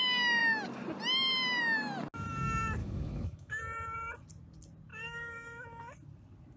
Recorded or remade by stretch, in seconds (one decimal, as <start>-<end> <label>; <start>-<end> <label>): 0.0-2.8 recorded; 2.8-3.6 remade; 3.6-4.9 recorded; 4.9-5.8 remade; 5.8-6.6 recorded